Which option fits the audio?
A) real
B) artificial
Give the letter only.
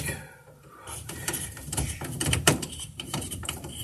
B